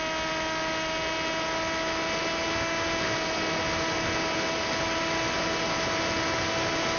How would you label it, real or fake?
real